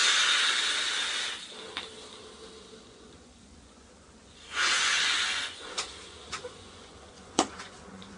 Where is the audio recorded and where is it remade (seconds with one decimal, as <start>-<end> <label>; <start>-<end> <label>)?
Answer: 0.0-2.8 recorded; 2.8-8.2 remade